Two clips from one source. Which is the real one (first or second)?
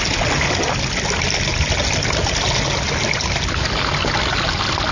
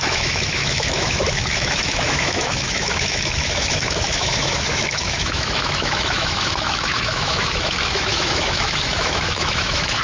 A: first